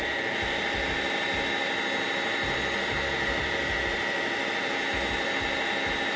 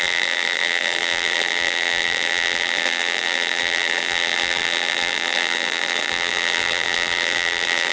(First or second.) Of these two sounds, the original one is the first